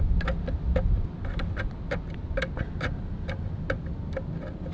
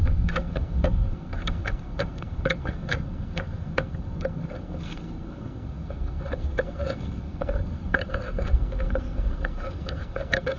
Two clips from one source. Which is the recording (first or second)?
first